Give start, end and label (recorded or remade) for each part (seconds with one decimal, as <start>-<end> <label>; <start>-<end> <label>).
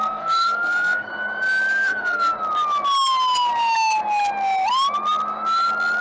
0.0-1.1 remade; 1.1-1.7 recorded; 1.7-2.3 remade; 2.3-6.0 recorded